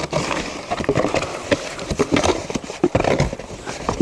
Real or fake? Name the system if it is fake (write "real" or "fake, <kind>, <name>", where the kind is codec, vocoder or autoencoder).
real